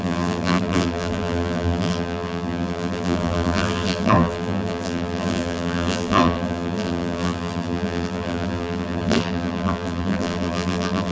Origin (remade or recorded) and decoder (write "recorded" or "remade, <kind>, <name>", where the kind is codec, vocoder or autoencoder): remade, vocoder, BigVGAN v2